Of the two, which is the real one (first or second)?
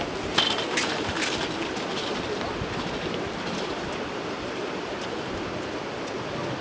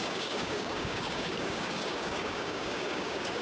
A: first